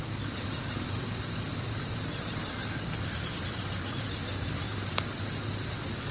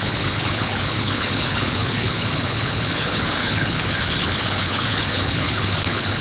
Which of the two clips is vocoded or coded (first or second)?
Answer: second